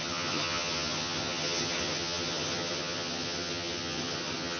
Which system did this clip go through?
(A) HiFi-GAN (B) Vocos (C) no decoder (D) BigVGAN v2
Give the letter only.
A